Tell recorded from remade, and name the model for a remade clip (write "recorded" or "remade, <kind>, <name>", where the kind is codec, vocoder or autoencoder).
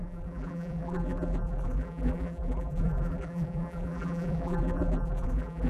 remade, vocoder, BigVGAN v2